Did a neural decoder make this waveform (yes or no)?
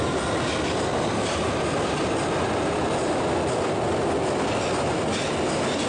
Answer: no